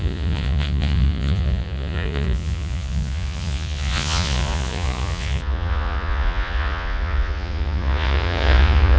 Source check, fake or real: fake